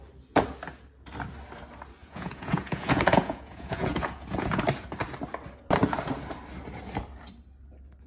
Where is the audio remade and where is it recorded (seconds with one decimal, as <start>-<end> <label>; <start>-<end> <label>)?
0.0-2.0 recorded; 2.0-4.6 remade; 4.6-8.1 recorded